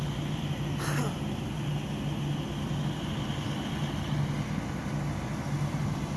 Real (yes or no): yes